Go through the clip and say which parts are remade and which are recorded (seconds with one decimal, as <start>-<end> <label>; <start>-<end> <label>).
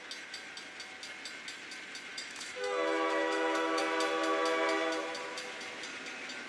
0.0-2.1 recorded; 2.1-3.8 remade; 3.8-6.5 recorded